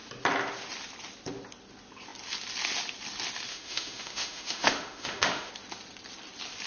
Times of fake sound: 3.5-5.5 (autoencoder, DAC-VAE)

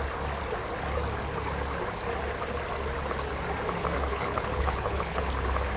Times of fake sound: 4.1-5.2 (codec, HILCodec)

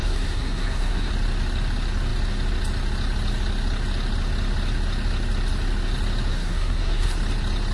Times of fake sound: 0.0-1.1 (codec, SNAC); 6.3-7.2